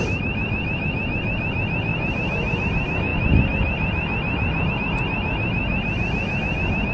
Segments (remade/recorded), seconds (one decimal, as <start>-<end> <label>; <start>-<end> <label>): 0.0-1.9 recorded; 1.9-2.6 remade; 2.6-6.9 recorded